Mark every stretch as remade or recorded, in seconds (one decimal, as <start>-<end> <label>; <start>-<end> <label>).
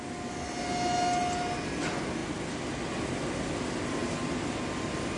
0.0-5.2 recorded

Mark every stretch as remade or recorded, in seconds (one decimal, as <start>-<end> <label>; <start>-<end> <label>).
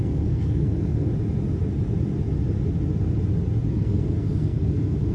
0.0-1.1 remade; 1.1-3.7 recorded; 3.7-5.1 remade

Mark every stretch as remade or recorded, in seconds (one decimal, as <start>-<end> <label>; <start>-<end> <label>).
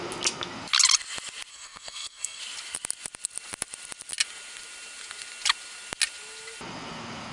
0.0-1.5 recorded; 1.5-2.4 remade; 2.4-7.3 recorded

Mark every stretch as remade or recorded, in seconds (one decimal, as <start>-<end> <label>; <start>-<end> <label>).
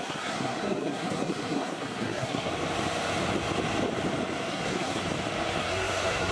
0.0-2.5 remade; 2.5-4.5 recorded; 4.5-5.0 remade; 5.0-5.6 recorded; 5.6-6.3 remade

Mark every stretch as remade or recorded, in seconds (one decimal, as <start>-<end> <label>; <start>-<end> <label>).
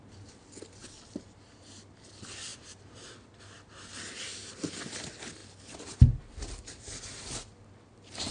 0.0-8.3 recorded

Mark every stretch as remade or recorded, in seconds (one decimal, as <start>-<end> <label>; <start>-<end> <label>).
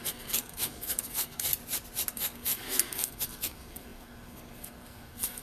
0.0-1.5 remade; 1.5-2.1 recorded; 2.1-5.4 remade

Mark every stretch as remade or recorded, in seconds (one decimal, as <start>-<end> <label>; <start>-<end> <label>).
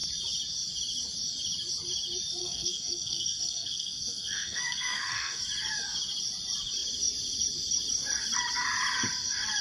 0.0-2.4 recorded; 2.4-5.4 remade; 5.4-9.6 recorded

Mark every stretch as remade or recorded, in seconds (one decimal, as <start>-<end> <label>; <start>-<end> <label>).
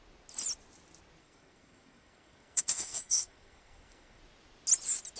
0.0-1.2 recorded; 1.2-4.2 remade; 4.2-5.2 recorded